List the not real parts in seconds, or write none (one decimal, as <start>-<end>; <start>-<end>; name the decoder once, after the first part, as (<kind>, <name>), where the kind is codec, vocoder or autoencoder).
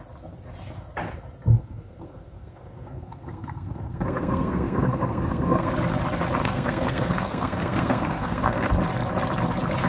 1.5-5.7 (codec, SNAC); 6.4-8.7